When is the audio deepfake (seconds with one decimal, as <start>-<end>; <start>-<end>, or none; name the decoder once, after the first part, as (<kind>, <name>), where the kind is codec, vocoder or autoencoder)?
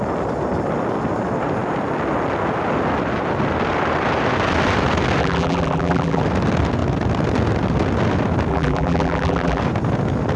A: 5.2-6.2 (vocoder, BigVGAN v2); 8.5-9.6